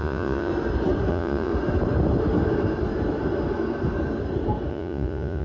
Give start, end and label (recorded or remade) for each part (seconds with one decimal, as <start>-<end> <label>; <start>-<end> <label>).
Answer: 0.0-0.5 remade; 0.5-1.1 recorded; 1.1-1.5 remade; 1.5-4.7 recorded; 4.7-5.4 remade